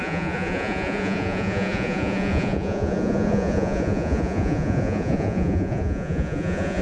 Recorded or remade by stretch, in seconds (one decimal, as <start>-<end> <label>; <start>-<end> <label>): 0.0-6.8 remade